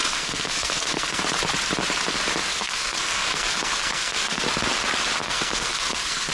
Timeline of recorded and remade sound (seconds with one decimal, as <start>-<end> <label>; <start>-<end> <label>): 0.0-1.2 remade; 1.2-2.5 recorded; 2.5-4.4 remade; 4.4-5.2 recorded; 5.2-6.3 remade